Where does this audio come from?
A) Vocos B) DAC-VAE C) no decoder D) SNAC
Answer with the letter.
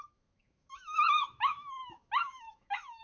B